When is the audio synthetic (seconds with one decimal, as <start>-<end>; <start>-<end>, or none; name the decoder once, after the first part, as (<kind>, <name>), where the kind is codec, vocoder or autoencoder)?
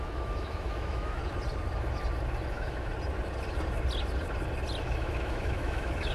0.0-1.2 (autoencoder, DAC-VAE); 2.5-2.9; 4.8-6.1